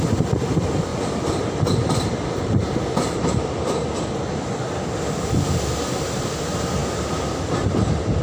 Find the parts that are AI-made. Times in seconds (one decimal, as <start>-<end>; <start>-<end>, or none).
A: 0.0-0.9; 1.7-6.8